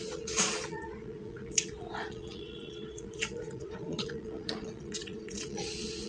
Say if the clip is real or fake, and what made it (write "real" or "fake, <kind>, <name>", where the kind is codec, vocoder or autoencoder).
fake, vocoder, Vocos